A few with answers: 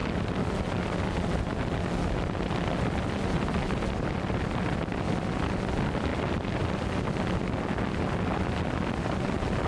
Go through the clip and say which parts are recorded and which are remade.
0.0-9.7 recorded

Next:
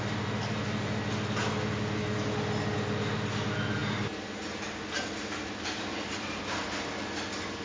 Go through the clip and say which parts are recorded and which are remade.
0.0-7.6 recorded

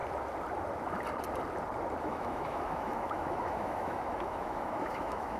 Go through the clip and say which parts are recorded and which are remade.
0.0-2.0 recorded; 2.0-5.4 remade

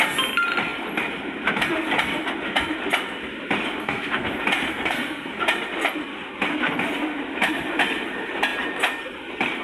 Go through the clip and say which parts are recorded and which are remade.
0.0-3.8 recorded; 3.8-4.3 remade; 4.3-4.7 recorded; 4.7-5.4 remade; 5.4-9.6 recorded

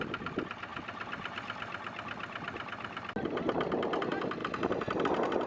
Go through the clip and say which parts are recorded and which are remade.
0.0-5.5 recorded

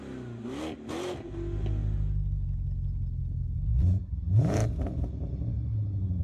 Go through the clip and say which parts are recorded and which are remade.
0.0-3.7 recorded; 3.7-5.3 remade; 5.3-6.2 recorded

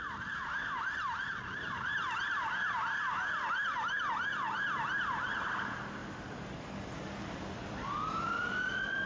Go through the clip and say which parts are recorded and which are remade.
0.0-9.1 recorded